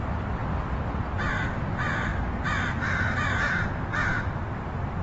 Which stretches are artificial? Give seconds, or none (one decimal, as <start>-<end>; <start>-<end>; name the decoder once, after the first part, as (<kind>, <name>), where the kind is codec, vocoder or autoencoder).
0.0-0.4 (vocoder, BigVGAN v2); 1.0-2.1; 2.7-5.0